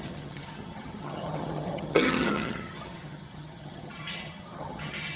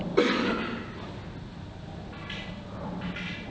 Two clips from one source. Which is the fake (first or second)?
first